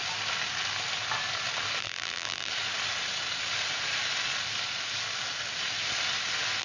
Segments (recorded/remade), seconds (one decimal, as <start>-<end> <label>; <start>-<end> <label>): 0.0-1.8 recorded; 1.8-2.5 remade; 2.5-6.6 recorded